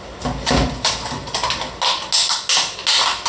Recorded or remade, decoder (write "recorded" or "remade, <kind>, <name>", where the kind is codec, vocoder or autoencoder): recorded